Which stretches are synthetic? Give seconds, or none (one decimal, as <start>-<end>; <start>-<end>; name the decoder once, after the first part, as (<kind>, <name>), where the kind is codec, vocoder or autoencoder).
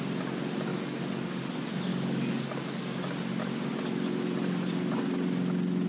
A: 0.7-1.4 (codec, DAC); 1.9-3.0